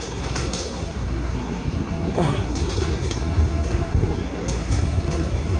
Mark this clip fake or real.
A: fake